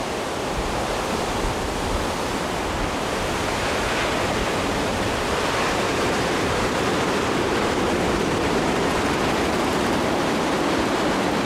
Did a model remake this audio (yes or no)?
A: yes